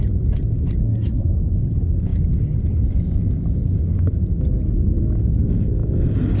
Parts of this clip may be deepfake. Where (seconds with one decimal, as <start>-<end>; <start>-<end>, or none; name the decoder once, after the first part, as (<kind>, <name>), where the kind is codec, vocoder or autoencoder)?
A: 0.8-1.4 (codec, SNAC)